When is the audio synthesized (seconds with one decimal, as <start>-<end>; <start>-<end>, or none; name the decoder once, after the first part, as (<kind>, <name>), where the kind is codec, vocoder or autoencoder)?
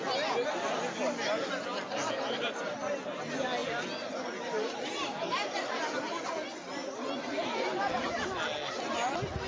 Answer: none